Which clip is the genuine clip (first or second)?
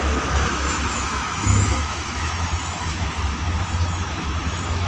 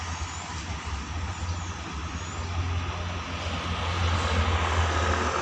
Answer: second